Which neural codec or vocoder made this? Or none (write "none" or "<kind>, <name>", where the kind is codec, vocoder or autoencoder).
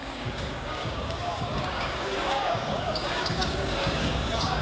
codec, DAC